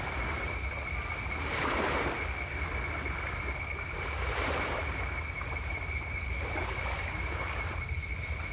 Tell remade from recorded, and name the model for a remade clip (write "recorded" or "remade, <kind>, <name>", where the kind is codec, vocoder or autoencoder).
recorded